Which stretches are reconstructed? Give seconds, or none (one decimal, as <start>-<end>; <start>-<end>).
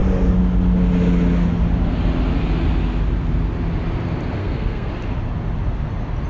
4.4-4.9